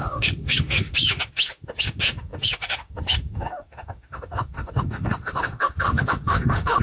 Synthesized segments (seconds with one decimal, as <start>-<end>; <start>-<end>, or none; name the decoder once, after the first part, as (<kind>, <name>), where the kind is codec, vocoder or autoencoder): 0.0-6.8 (autoencoder, DAC-VAE)